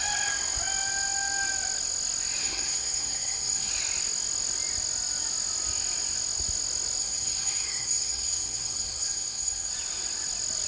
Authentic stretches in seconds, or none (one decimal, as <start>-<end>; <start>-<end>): 0.0-2.4; 3.7-7.0; 9.7-10.7